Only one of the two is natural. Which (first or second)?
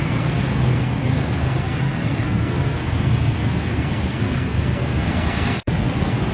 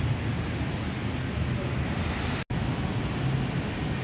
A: second